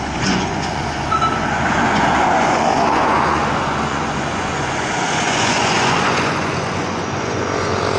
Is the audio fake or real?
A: fake